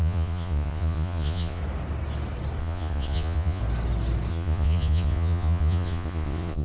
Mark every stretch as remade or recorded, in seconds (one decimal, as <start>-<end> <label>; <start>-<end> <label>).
0.0-1.6 remade; 1.6-2.6 recorded; 2.6-3.6 remade; 3.6-4.3 recorded; 4.3-6.6 remade